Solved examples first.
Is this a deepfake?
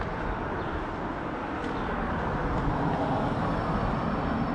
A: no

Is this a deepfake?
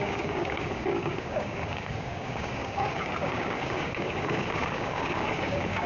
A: yes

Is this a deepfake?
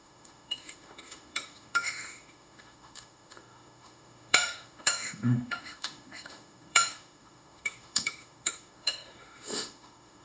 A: yes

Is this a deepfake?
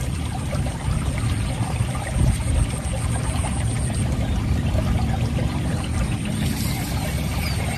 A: no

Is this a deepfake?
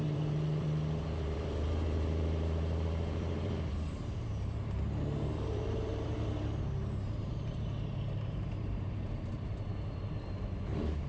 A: yes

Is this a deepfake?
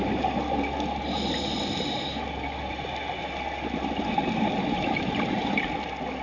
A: no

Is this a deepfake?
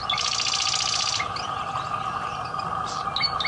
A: no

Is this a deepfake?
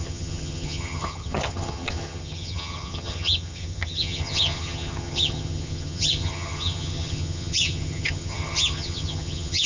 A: yes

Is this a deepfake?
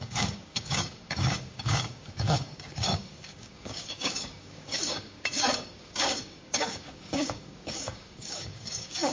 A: yes